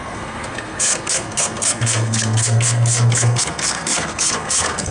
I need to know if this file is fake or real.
fake